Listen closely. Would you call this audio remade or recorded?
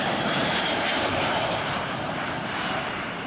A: remade